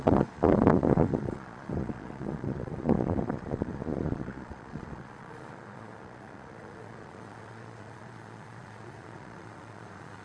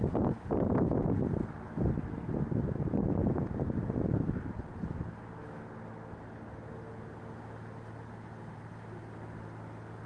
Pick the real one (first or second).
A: second